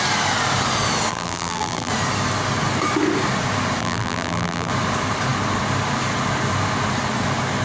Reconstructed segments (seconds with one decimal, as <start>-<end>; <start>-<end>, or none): 1.1-1.9; 3.8-4.7